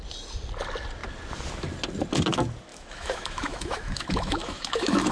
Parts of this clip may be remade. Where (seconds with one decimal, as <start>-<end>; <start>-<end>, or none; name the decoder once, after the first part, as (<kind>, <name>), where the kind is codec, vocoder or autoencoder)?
2.7-5.1 (autoencoder, DAC-VAE)